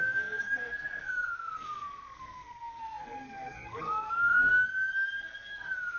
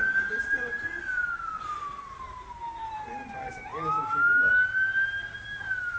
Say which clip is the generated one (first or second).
first